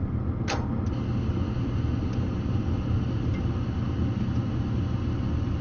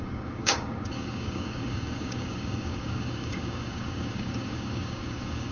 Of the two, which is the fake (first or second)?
second